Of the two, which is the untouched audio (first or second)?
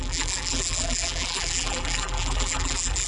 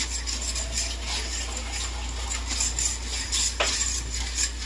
second